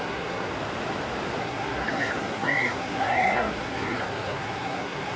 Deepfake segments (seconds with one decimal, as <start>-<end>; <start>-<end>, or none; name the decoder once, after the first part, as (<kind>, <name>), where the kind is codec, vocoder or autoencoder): 0.0-0.5 (codec, SNAC); 1.4-5.2